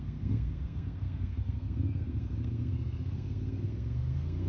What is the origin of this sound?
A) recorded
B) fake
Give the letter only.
B